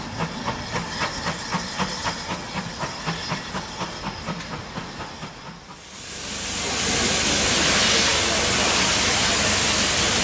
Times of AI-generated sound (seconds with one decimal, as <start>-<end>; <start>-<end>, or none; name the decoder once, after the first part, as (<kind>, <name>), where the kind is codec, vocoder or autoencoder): none